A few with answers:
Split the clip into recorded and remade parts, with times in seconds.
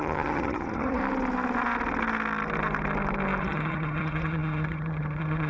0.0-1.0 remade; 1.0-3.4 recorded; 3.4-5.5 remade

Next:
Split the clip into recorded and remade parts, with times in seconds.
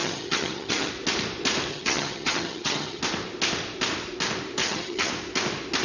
0.0-0.9 remade; 0.9-1.7 recorded; 1.7-3.0 remade; 3.0-4.6 recorded; 4.6-5.1 remade; 5.1-5.8 recorded